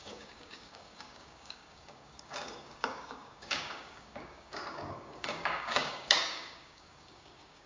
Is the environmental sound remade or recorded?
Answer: remade